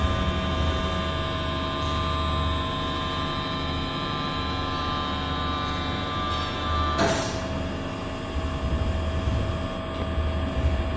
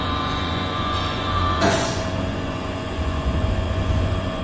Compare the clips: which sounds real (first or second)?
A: first